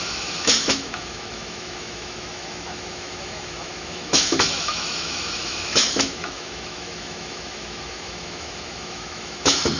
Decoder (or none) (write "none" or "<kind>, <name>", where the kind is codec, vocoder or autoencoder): autoencoder, DAC-VAE